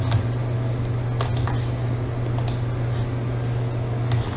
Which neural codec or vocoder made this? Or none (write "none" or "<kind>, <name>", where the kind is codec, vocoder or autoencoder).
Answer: none